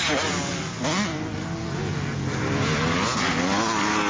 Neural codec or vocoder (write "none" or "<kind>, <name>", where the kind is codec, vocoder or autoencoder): none